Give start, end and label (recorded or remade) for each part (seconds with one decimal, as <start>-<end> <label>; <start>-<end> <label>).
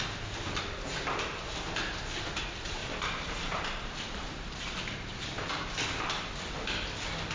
0.0-2.8 recorded; 2.8-6.3 remade; 6.3-7.3 recorded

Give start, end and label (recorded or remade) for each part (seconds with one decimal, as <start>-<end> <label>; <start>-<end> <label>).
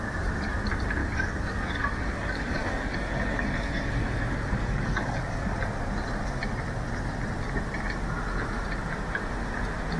0.0-1.0 recorded; 1.0-5.5 remade; 5.5-10.0 recorded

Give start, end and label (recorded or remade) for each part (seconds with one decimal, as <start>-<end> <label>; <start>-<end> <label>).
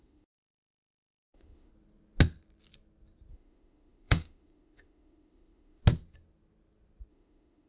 0.0-1.7 remade; 1.7-3.3 recorded; 3.3-5.8 remade; 5.8-7.1 recorded; 7.1-7.7 remade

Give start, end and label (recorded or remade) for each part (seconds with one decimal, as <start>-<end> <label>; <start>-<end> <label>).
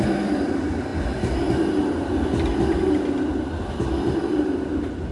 0.0-5.1 recorded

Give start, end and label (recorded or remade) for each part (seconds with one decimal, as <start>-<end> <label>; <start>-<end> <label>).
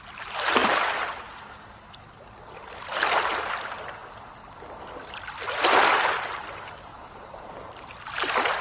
0.0-6.9 recorded; 6.9-7.5 remade; 7.5-8.6 recorded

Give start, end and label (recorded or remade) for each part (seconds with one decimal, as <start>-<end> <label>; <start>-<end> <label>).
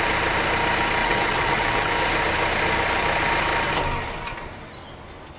0.0-1.0 recorded; 1.0-1.9 remade; 1.9-5.4 recorded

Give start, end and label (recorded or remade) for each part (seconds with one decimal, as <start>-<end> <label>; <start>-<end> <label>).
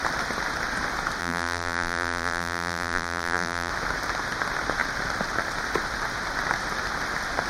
0.0-1.2 recorded; 1.2-3.7 remade; 3.7-7.5 recorded